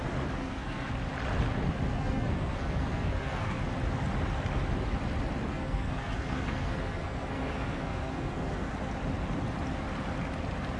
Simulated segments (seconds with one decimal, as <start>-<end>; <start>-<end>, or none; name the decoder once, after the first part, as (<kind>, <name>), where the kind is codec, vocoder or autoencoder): 0.4-0.9 (codec, SNAC); 1.9-3.6; 5.5-8.7

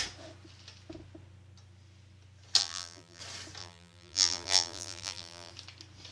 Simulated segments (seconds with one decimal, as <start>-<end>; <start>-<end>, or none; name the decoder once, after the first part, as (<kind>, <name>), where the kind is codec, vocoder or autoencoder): 2.6-3.2 (vocoder, BigVGAN v2); 3.6-5.5

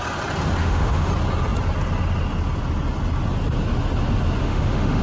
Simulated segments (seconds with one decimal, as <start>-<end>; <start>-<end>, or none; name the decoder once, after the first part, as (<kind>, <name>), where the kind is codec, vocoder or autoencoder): 0.6-1.1 (autoencoder, DAC-VAE); 4.4-5.0

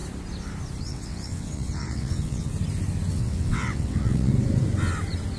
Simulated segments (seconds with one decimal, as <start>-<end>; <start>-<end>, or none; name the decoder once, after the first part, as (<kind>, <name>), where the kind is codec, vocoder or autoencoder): 0.8-2.5 (vocoder, WaveNeXt); 3.1-4.3